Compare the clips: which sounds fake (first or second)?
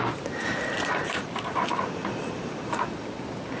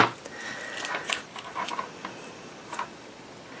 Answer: first